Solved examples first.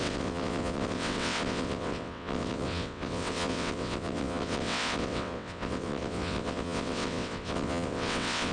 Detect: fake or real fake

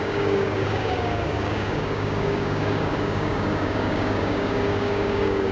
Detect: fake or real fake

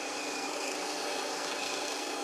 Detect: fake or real fake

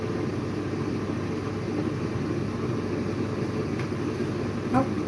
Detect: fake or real real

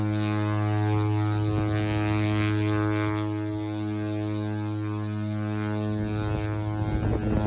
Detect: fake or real real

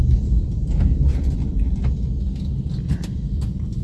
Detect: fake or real real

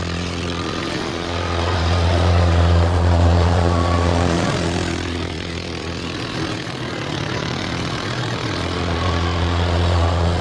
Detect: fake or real fake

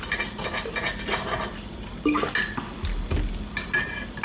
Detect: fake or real real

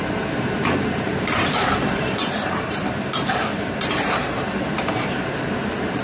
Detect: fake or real fake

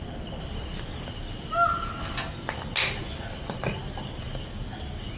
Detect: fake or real real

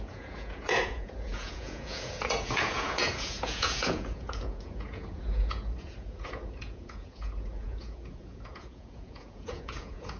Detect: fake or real fake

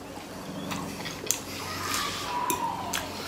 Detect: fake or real real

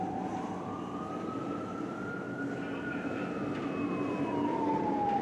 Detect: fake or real real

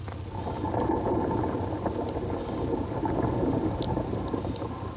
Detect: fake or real real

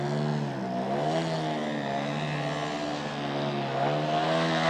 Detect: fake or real real